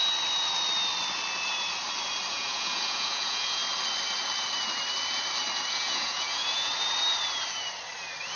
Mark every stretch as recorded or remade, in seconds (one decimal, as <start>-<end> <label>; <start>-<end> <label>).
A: 0.0-2.3 recorded; 2.3-3.6 remade; 3.6-5.7 recorded; 5.7-6.7 remade; 6.7-8.4 recorded